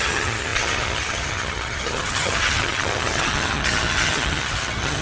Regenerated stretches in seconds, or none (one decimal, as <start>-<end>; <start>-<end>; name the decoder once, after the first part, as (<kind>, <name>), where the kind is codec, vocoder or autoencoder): 0.0-5.0 (vocoder, HiFi-GAN)